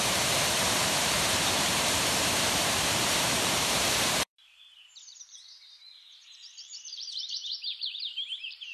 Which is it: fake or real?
fake